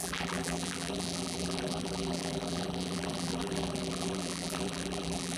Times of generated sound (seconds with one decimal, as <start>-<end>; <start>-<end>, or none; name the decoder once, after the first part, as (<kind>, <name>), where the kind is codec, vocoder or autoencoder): 0.0-5.4 (vocoder, BigVGAN v2)